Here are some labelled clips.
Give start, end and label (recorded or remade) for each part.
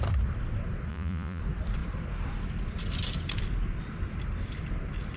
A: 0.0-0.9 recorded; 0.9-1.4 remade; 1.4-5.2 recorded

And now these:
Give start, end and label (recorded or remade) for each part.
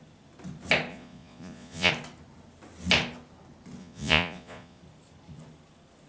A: 0.0-0.9 recorded; 0.9-1.9 remade; 1.9-3.8 recorded; 3.8-4.8 remade; 4.8-6.1 recorded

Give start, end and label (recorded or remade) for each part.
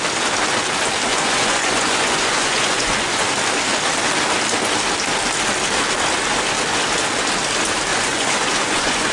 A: 0.0-1.1 recorded; 1.1-3.3 remade; 3.3-7.9 recorded; 7.9-9.1 remade